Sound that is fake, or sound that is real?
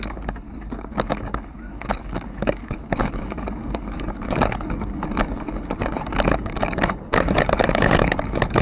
fake